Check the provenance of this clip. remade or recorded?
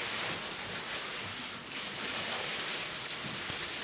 recorded